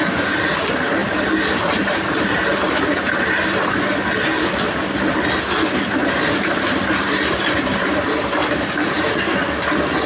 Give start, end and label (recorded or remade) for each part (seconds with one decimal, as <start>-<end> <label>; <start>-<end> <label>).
0.0-1.0 recorded; 1.0-3.7 remade; 3.7-6.0 recorded; 6.0-7.3 remade; 7.3-8.4 recorded; 8.4-9.1 remade; 9.1-10.1 recorded